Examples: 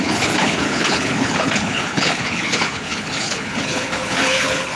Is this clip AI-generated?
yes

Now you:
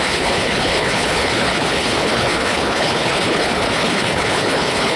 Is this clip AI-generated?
yes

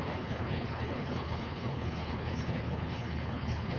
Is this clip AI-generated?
yes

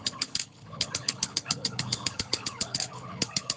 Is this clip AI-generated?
yes